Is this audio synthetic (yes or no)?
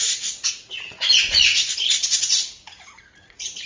yes